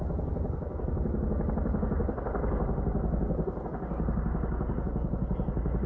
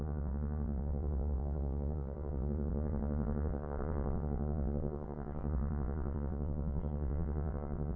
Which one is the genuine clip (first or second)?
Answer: first